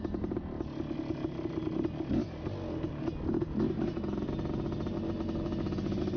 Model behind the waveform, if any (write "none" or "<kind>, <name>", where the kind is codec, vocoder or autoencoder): none